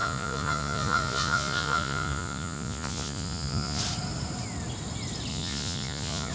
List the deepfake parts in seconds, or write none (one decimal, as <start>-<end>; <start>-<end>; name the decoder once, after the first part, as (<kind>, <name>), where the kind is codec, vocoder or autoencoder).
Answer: 0.0-3.8 (vocoder, Vocos); 5.3-6.3